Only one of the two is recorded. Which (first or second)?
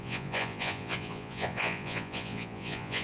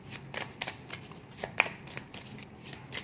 second